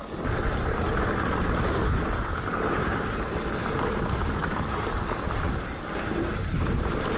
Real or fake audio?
real